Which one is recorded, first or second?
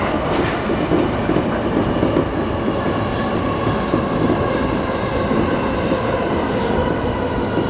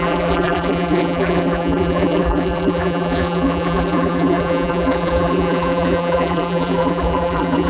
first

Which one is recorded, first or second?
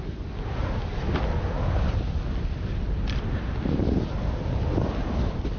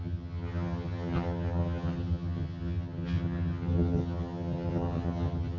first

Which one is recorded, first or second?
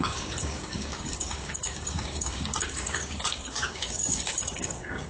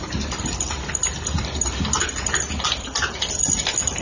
second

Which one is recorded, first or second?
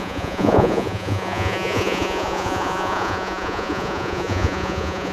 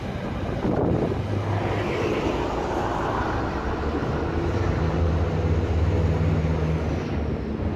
second